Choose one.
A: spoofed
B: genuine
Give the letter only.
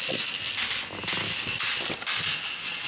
B